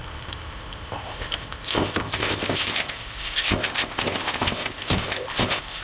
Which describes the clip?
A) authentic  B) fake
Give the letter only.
B